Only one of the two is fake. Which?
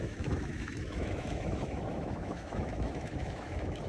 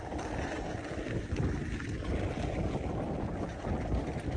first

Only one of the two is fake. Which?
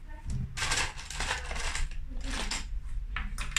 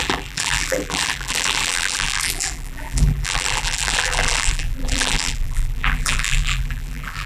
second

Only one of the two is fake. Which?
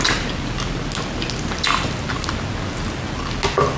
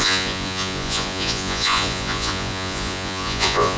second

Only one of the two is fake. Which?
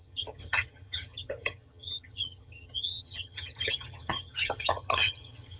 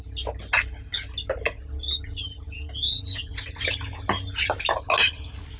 first